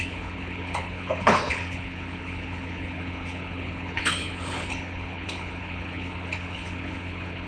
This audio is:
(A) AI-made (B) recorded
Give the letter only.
A